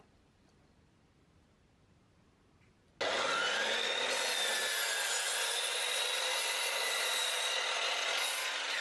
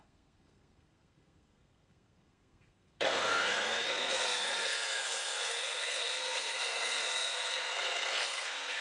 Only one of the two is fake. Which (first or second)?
second